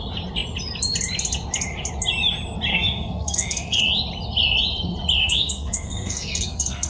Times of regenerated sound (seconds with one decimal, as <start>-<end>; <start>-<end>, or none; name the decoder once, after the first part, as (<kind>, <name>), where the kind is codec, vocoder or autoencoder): 2.7-3.8 (codec, SNAC); 5.2-6.9